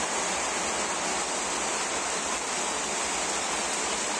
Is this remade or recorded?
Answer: recorded